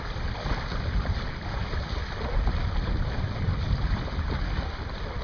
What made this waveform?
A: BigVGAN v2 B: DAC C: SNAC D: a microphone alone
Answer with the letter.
D